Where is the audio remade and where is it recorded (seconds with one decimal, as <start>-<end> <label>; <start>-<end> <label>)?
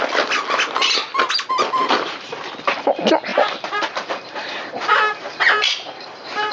0.0-1.8 recorded; 1.8-2.5 remade; 2.5-3.3 recorded; 3.3-6.5 remade